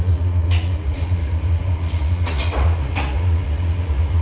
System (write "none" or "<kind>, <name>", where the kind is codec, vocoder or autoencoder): vocoder, Vocos